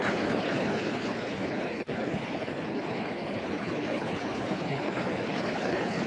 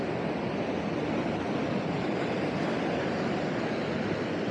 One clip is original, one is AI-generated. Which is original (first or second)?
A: second